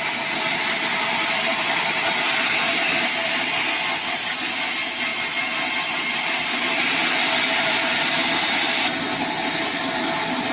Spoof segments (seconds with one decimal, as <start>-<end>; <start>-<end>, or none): none